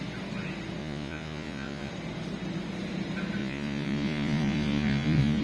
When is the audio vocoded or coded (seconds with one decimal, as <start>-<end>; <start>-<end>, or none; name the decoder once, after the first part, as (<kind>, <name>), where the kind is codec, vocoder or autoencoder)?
0.8-1.9 (vocoder, Vocos); 3.4-5.4